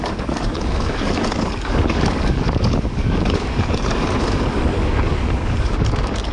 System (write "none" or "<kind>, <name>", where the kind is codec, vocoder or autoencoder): codec, DAC